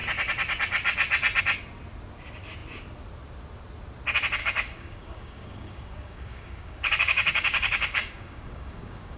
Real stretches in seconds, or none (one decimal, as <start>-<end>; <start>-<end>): 0.0-4.4